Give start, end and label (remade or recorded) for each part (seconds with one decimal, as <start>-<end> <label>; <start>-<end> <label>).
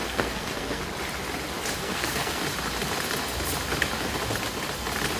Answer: 0.0-0.8 remade; 0.8-1.8 recorded; 1.8-2.4 remade; 2.4-5.2 recorded